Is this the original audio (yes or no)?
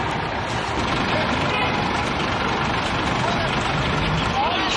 yes